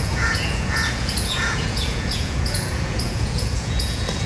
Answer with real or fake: fake